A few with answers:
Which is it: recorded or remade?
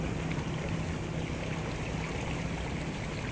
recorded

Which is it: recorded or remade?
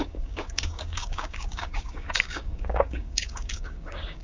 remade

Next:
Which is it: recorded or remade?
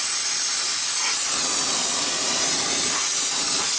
recorded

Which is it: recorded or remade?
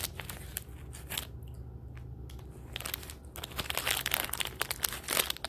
recorded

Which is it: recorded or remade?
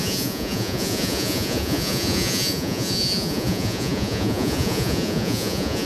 remade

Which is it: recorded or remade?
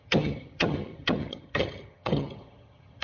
remade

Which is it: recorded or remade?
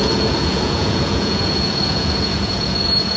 remade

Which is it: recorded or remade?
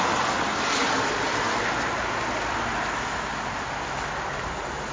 recorded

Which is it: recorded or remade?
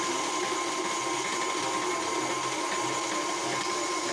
recorded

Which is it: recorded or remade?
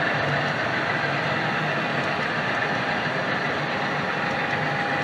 recorded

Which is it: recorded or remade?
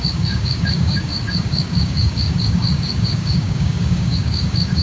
remade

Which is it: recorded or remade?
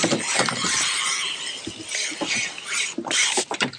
remade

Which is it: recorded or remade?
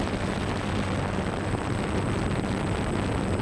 recorded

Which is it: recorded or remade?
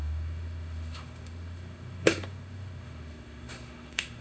remade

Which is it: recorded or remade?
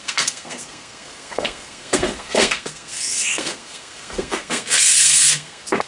remade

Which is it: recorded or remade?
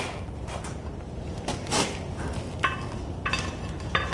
recorded